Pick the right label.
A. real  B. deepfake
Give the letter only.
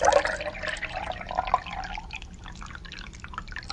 A